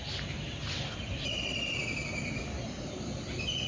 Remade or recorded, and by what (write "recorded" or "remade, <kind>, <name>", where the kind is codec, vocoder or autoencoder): recorded